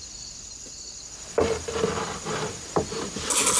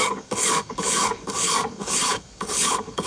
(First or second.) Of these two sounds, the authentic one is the first